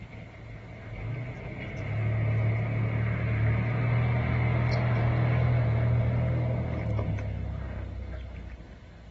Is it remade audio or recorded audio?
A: recorded